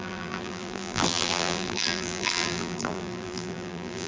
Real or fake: fake